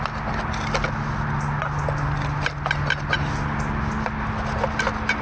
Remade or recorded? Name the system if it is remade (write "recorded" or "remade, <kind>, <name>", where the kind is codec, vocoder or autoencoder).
recorded